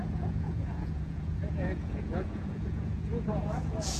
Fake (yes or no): yes